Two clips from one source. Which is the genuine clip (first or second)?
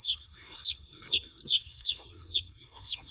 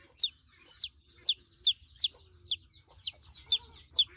second